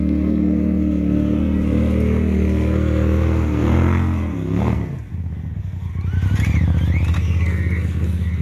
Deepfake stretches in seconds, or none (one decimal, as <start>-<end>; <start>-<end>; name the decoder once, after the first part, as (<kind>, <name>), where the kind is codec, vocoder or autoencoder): 0.0-5.9 (codec, SNAC); 7.1-8.4

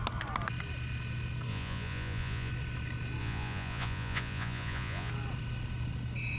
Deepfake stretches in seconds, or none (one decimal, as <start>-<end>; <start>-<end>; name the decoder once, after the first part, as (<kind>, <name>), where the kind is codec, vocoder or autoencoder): 1.5-2.5 (vocoder, Vocos); 3.2-5.1

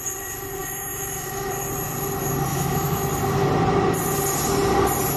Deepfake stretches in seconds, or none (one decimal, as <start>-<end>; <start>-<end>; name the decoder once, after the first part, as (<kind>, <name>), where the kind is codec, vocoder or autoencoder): 0.6-1.5 (autoencoder, DAC-VAE); 2.5-3.0

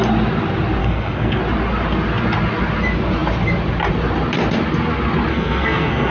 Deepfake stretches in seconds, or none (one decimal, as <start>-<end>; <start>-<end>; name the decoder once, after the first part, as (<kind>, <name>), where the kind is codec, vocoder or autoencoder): 0.8-1.4 (codec, SNAC); 5.3-6.1

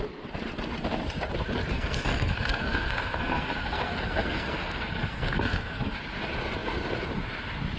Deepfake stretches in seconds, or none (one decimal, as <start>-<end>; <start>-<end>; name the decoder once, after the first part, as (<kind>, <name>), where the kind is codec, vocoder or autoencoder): 1.7-6.0 (codec, SNAC)

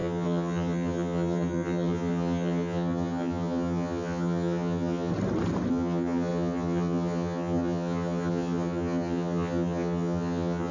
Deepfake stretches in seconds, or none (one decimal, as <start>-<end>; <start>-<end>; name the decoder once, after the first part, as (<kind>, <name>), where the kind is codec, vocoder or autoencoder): 0.0-5.1 (vocoder, HiFi-GAN); 5.7-10.7